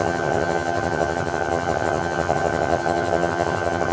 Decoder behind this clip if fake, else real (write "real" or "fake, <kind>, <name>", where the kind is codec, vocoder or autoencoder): fake, vocoder, HiFi-GAN